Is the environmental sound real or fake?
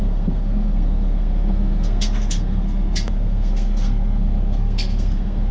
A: fake